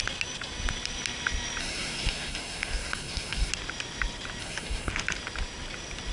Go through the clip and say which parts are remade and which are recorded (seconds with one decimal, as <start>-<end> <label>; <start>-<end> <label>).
0.0-1.6 recorded; 1.6-3.5 remade; 3.5-4.4 recorded; 4.4-4.9 remade; 4.9-6.1 recorded